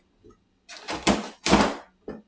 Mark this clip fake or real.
real